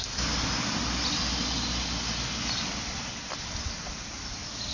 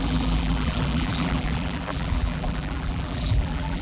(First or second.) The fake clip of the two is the second